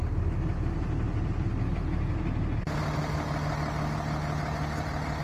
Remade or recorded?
recorded